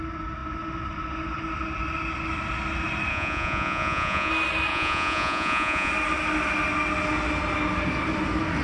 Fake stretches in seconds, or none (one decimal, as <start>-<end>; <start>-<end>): 3.1-4.3; 4.7-5.9